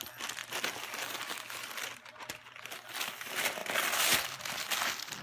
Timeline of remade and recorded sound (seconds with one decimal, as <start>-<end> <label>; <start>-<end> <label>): 0.0-5.2 recorded